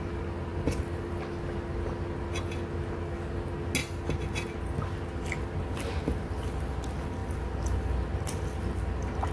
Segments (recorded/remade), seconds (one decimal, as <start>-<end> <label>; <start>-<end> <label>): 0.0-9.3 recorded